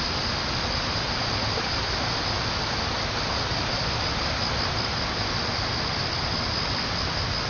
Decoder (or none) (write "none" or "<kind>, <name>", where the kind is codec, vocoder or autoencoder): none